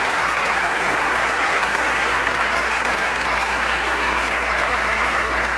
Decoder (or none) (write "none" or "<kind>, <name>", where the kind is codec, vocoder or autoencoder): codec, SNAC